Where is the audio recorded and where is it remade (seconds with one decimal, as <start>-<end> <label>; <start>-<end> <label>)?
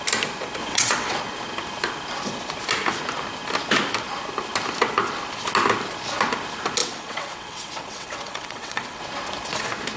0.0-0.6 recorded; 0.6-1.2 remade; 1.2-6.8 recorded; 6.8-9.0 remade; 9.0-10.0 recorded